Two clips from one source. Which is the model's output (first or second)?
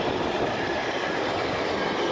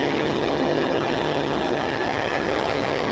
second